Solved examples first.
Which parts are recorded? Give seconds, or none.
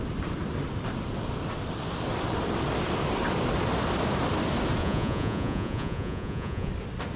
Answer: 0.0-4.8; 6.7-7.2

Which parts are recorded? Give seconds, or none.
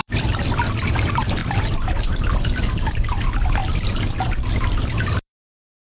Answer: 3.6-4.5